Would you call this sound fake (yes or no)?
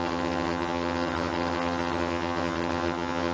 yes